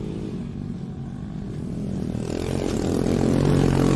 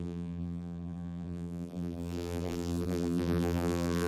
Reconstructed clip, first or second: second